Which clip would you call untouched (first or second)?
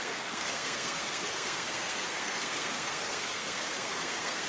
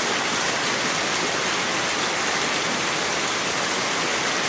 second